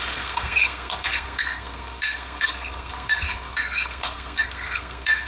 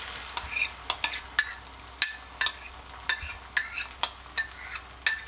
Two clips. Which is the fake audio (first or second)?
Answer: first